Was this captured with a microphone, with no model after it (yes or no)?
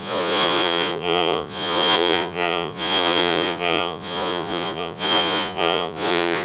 no